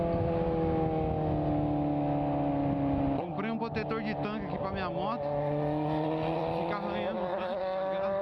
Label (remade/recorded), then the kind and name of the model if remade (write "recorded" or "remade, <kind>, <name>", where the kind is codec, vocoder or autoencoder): recorded